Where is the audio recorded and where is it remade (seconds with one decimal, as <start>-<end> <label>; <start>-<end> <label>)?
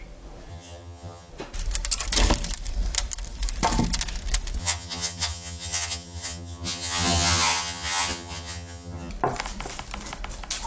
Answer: 0.0-0.5 recorded; 0.5-1.3 remade; 1.3-4.6 recorded; 4.6-9.1 remade; 9.1-10.7 recorded